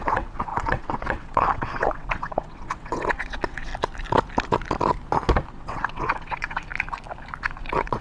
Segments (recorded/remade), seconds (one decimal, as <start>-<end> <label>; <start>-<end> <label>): 0.0-3.7 remade; 3.7-5.5 recorded; 5.5-6.7 remade; 6.7-7.6 recorded; 7.6-8.0 remade